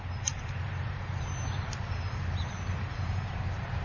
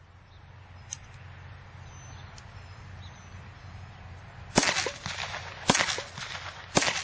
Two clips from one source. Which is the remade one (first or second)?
first